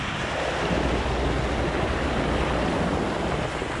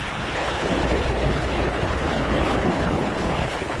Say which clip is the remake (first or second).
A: second